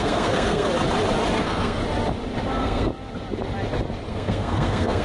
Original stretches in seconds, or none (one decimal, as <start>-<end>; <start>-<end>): 0.7-1.4; 1.8-2.5; 2.9-4.1

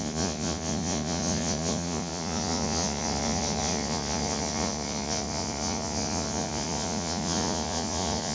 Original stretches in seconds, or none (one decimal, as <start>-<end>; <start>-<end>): none

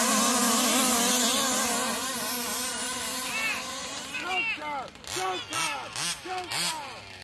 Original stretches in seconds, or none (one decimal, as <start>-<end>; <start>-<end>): 0.0-2.0; 4.1-7.2

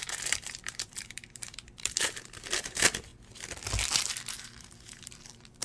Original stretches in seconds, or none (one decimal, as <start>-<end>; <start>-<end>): 3.1-4.3